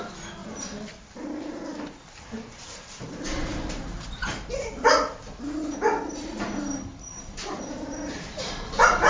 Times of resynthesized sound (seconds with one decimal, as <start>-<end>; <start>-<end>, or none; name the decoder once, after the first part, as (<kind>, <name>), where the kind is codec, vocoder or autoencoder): 0.4-5.1 (vocoder, BigVGAN v2); 6.9-9.1